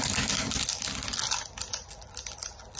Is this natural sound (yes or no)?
yes